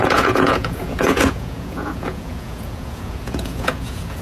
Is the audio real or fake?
fake